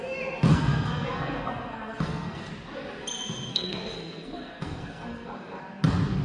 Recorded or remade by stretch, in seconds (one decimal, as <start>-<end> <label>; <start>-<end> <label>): 0.0-0.5 recorded; 0.5-2.5 remade; 2.5-3.5 recorded; 3.5-5.6 remade; 5.6-6.2 recorded